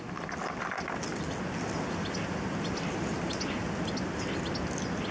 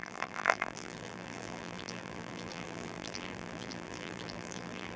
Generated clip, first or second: second